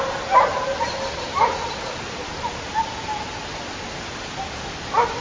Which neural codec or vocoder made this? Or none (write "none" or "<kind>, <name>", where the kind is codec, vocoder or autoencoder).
none